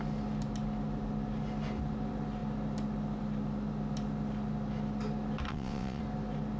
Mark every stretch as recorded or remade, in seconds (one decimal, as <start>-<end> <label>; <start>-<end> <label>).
0.0-5.5 recorded; 5.5-6.0 remade; 6.0-6.6 recorded